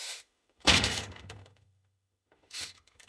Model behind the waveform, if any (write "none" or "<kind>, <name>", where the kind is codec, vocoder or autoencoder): autoencoder, DAC-VAE